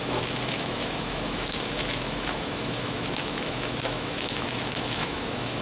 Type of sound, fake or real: fake